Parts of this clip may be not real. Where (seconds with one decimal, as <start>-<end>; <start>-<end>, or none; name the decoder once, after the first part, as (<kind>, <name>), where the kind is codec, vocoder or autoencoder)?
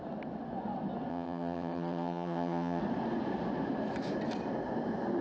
1.1-2.8 (vocoder, HiFi-GAN)